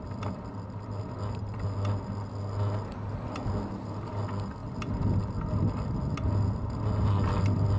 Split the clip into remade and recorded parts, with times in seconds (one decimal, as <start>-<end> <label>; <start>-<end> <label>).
0.0-7.8 recorded